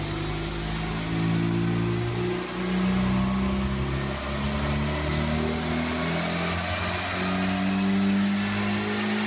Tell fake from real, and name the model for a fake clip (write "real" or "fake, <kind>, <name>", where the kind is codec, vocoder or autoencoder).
real